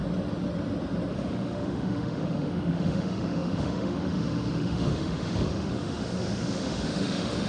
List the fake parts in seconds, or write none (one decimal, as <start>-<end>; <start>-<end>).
1.1-7.5

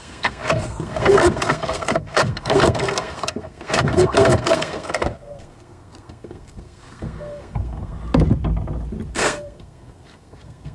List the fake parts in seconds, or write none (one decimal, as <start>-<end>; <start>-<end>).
0.0-8.0; 9.1-10.7

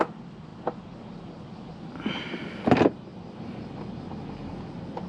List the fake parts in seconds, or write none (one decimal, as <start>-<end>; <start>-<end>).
none

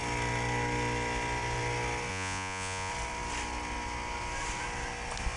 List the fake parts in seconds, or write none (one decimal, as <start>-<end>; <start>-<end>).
2.1-2.9

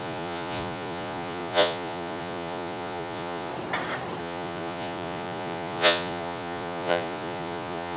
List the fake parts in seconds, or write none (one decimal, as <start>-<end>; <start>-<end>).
0.0-3.5; 4.2-8.0